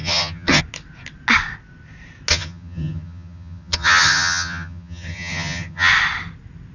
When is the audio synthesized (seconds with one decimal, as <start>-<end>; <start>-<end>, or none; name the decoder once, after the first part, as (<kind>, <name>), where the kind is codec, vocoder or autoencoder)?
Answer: 0.0-0.6 (vocoder, HiFi-GAN); 2.3-5.9